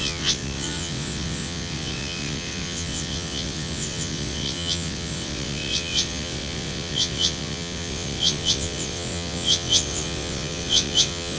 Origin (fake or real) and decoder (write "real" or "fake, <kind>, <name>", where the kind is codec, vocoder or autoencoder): fake, vocoder, WaveNeXt